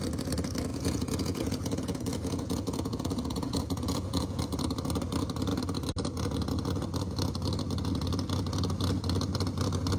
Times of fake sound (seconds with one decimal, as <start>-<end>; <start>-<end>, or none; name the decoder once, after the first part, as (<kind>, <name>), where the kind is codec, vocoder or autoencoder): 0.7-4.4 (vocoder, Vocos)